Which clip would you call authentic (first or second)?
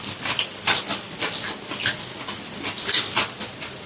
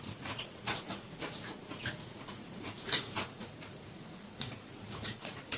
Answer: first